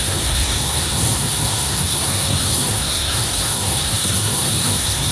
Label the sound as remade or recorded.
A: remade